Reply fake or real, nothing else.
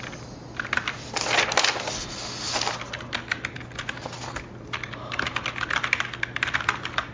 real